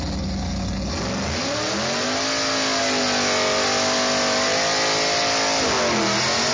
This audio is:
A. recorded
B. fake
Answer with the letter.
A